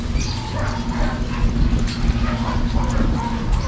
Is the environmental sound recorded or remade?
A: recorded